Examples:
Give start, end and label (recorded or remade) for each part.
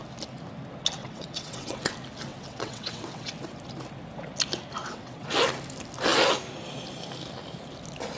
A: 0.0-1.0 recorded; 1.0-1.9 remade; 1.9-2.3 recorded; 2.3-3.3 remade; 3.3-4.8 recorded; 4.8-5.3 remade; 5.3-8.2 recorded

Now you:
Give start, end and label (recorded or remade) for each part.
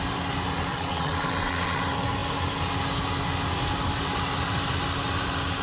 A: 0.0-0.7 recorded; 0.7-1.8 remade; 1.8-5.6 recorded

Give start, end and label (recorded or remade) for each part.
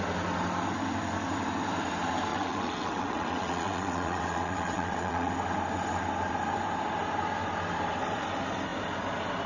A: 0.0-2.3 recorded; 2.3-5.3 remade; 5.3-9.5 recorded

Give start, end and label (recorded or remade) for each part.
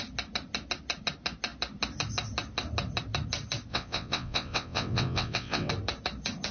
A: 0.0-3.7 recorded; 3.7-5.7 remade; 5.7-6.5 recorded